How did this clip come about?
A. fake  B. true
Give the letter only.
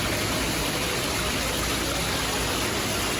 B